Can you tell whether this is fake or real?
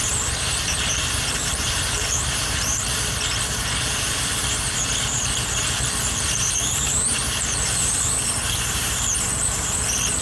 fake